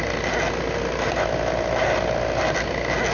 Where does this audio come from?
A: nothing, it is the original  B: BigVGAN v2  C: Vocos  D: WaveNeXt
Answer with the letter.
A